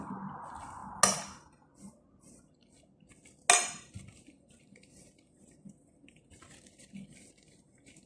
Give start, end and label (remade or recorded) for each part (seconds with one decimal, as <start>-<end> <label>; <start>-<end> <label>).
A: 0.0-8.1 recorded